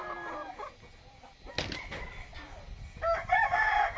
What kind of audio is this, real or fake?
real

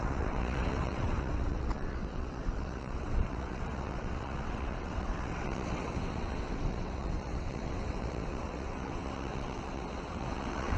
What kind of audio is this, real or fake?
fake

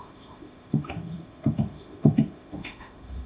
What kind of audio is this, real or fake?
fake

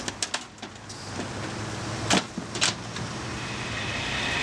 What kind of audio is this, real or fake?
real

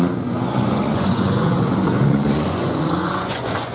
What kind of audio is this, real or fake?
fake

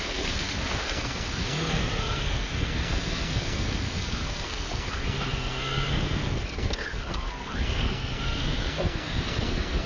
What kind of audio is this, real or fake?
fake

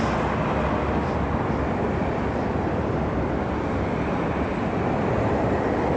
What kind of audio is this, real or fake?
fake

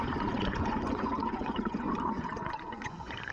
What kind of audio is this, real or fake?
fake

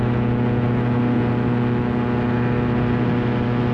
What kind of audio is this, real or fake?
real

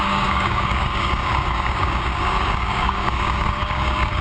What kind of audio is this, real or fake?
fake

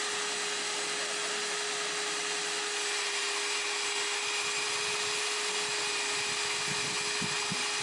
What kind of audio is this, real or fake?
real